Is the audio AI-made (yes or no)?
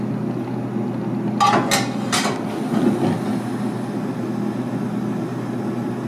no